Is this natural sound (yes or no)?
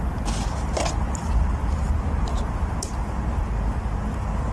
yes